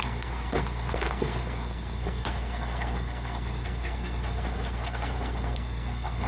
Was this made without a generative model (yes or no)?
no